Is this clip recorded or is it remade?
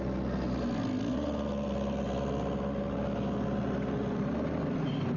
recorded